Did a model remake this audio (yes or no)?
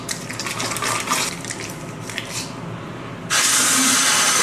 no